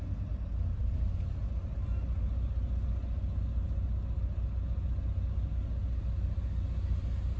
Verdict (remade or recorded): recorded